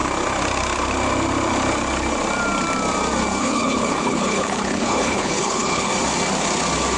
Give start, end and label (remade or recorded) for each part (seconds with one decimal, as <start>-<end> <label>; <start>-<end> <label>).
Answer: 0.0-3.4 recorded; 3.4-5.9 remade; 5.9-7.0 recorded